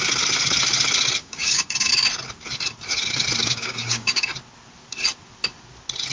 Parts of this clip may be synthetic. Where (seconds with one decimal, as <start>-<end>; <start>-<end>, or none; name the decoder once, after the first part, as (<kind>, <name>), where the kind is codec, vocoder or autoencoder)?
1.2-1.9 (codec, DAC); 3.4-4.3